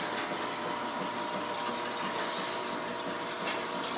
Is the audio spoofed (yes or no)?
no